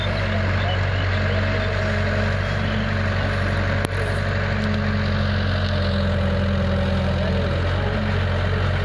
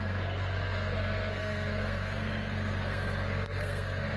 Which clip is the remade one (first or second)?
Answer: second